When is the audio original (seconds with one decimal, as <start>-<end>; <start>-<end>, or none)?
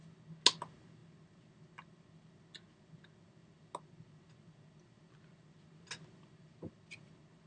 0.0-7.5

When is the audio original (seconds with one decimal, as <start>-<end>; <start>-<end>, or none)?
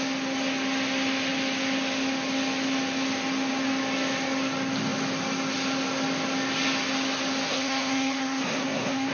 0.0-7.5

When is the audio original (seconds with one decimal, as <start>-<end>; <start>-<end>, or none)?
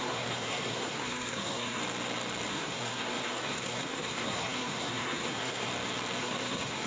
1.8-2.5; 5.7-6.2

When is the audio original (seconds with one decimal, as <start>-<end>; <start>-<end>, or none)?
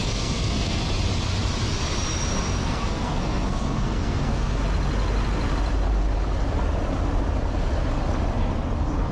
0.8-2.6; 4.6-9.1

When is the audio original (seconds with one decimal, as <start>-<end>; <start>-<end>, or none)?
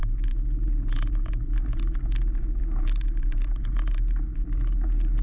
0.0-5.2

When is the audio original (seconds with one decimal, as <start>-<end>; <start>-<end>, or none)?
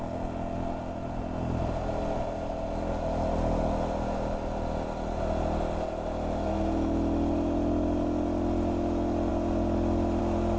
0.0-10.6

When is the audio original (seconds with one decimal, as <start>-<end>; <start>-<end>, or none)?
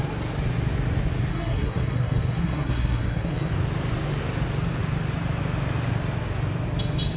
0.0-1.3; 3.5-7.2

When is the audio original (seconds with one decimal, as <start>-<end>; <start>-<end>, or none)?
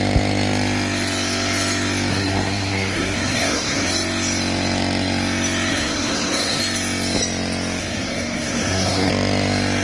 0.0-2.1; 3.9-5.7; 6.6-7.8; 9.1-9.8